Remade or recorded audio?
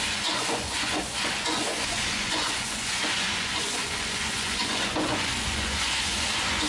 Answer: remade